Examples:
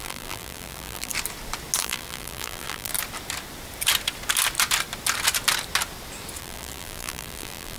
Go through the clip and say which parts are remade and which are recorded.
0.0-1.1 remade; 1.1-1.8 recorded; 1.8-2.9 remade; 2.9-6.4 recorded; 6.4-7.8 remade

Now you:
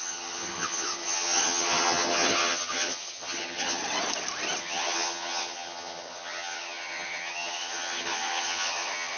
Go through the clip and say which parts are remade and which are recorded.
0.0-3.8 remade; 3.8-4.6 recorded; 4.6-9.2 remade